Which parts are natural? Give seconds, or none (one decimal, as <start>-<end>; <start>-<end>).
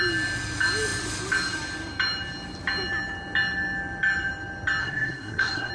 0.0-4.8